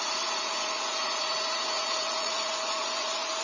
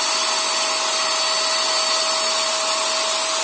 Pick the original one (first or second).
second